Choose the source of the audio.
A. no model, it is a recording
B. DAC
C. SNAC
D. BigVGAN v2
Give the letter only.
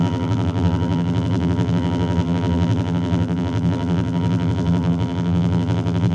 D